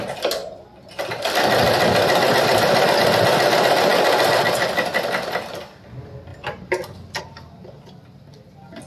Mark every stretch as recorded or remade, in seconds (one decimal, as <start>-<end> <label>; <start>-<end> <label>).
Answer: 0.0-8.9 recorded

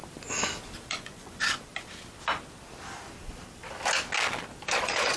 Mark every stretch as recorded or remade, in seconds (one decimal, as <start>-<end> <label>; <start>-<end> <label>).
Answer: 0.0-0.9 recorded; 0.9-1.7 remade; 1.7-4.8 recorded; 4.8-5.2 remade

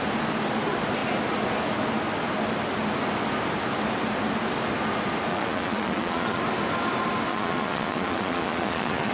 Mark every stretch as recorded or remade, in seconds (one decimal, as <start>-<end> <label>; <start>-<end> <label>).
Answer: 0.0-5.3 recorded; 5.3-6.4 remade; 6.4-7.3 recorded; 7.3-9.1 remade

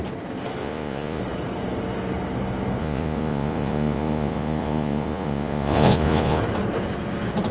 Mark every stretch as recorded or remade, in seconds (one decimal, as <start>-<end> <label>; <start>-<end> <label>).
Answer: 0.0-0.6 recorded; 0.6-1.2 remade; 1.2-2.8 recorded; 2.8-6.4 remade; 6.4-7.5 recorded

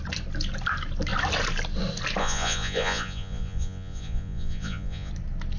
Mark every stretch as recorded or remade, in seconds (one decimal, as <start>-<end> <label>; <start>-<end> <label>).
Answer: 0.0-2.2 recorded; 2.2-5.1 remade; 5.1-5.6 recorded

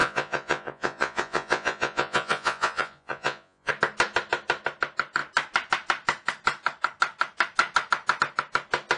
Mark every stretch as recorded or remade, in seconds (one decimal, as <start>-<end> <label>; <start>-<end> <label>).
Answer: 0.0-3.7 remade; 3.7-9.0 recorded

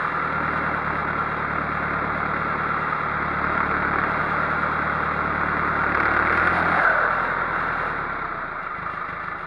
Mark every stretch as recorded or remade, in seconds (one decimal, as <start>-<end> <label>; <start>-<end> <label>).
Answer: 0.0-9.5 recorded